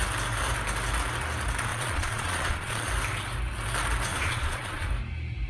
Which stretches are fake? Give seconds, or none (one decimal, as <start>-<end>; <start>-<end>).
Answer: 1.7-2.9; 4.1-4.9